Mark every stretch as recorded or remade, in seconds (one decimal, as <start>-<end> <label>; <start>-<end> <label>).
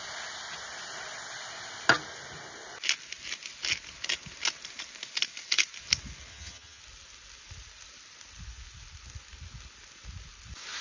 0.0-6.3 recorded; 6.3-6.8 remade; 6.8-10.8 recorded